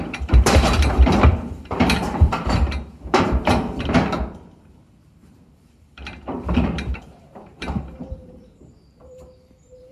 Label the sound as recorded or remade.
remade